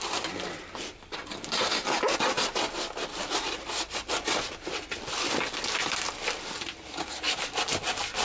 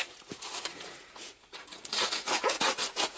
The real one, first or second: first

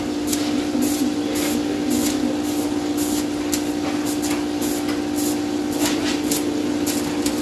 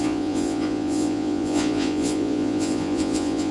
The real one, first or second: first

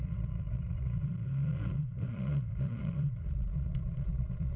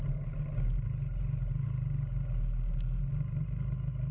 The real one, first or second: second